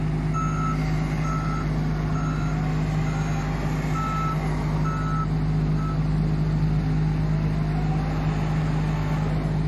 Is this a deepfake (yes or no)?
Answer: no